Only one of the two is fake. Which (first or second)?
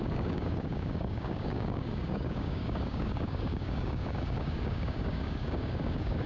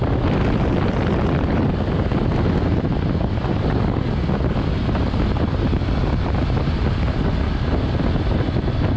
first